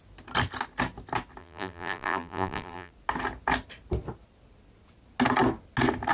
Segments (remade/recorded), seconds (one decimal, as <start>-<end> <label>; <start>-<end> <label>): 0.0-1.4 recorded; 1.4-2.9 remade; 2.9-6.1 recorded